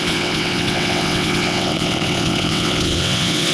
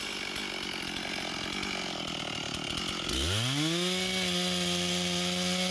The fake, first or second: first